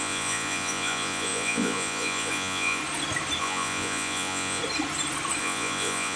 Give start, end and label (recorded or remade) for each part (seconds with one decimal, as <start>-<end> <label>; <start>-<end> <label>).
0.0-2.8 remade; 2.8-3.4 recorded; 3.4-4.6 remade; 4.6-5.4 recorded; 5.4-6.2 remade